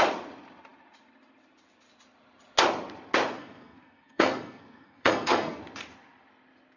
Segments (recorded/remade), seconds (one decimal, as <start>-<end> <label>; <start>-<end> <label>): 0.0-3.4 recorded; 3.4-5.6 remade; 5.6-6.8 recorded